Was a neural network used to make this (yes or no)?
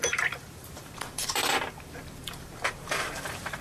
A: yes